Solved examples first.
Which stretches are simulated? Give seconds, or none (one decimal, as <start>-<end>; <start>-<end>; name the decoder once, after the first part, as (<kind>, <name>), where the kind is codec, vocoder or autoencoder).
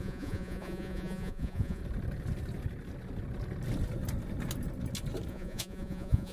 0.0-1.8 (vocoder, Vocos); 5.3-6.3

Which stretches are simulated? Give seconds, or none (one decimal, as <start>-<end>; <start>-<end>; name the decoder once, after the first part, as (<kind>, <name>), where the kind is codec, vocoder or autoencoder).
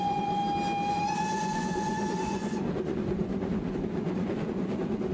0.0-0.4 (vocoder, Vocos); 0.9-5.1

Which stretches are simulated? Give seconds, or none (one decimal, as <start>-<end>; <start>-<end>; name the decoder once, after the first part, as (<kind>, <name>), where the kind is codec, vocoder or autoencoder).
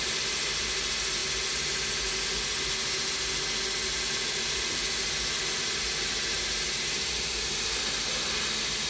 none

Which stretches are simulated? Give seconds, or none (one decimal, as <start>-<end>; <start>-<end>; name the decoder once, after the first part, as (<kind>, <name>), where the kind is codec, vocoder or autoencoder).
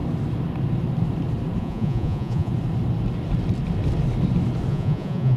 1.6-2.5 (vocoder, Vocos); 4.7-5.4